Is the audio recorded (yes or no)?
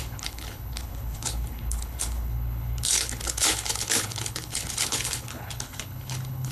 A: no